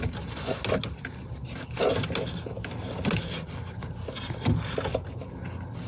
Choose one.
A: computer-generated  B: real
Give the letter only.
B